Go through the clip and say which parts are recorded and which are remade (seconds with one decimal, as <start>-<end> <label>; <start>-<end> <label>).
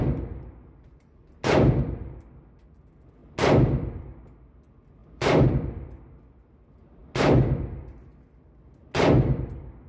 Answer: 0.0-5.0 recorded; 5.0-5.5 remade; 5.5-9.9 recorded